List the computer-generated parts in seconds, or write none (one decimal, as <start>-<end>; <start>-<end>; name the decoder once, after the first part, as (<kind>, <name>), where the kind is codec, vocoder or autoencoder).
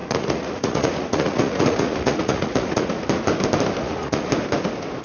0.0-3.0 (vocoder, Vocos); 3.8-4.3